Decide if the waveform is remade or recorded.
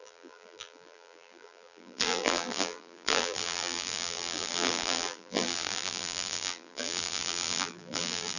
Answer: remade